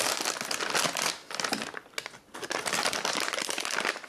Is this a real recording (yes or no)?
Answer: yes